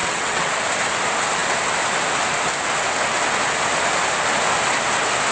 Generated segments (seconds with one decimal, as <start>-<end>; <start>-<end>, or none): 0.0-0.5